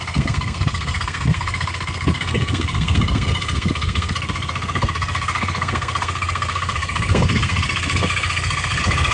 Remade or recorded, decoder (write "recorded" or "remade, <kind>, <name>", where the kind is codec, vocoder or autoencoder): remade, codec, SNAC